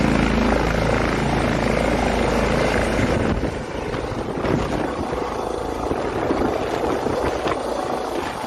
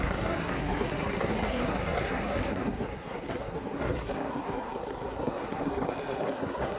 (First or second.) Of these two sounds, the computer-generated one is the second